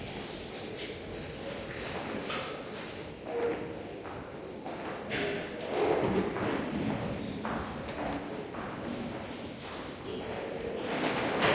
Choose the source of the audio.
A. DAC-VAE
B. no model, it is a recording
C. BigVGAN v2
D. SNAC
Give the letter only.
B